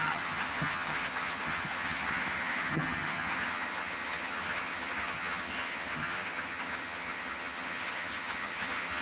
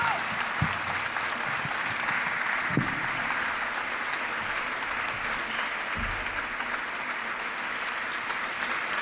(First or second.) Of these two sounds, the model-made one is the first